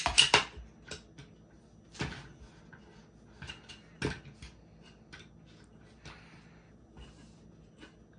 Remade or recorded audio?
recorded